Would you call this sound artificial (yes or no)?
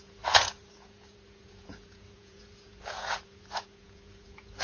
yes